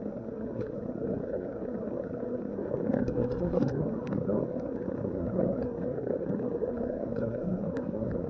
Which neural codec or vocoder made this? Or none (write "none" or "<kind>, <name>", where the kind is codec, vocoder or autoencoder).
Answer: codec, SNAC